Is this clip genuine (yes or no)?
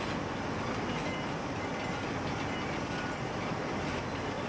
yes